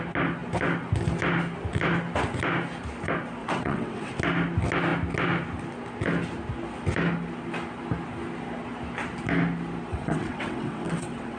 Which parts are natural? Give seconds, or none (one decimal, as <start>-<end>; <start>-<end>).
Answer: 0.0-3.4; 4.1-9.9